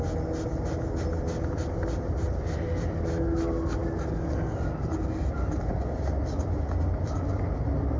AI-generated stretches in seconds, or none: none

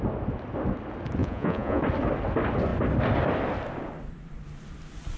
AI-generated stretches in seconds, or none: 1.2-1.8 (vocoder, Vocos)

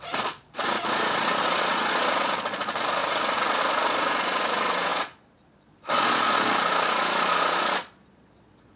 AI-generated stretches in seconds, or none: 0.0-8.8 (vocoder, Vocos)

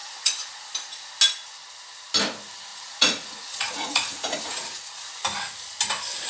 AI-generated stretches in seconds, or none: 0.0-0.7 (vocoder, Vocos); 2.7-5.1

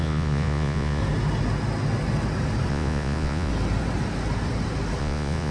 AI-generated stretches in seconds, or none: 0.0-1.0 (vocoder, Vocos); 2.7-3.5; 5.0-5.5

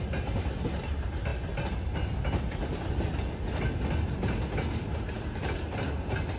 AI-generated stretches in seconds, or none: none